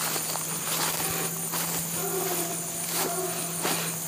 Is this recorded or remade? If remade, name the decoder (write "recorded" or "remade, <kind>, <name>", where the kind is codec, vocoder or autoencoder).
recorded